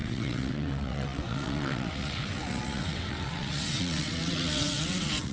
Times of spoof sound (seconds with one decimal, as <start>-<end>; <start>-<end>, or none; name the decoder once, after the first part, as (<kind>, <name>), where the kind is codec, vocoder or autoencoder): 0.0-5.3 (vocoder, WaveNeXt)